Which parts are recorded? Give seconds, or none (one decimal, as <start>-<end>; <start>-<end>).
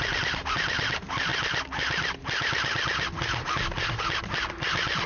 0.0-5.1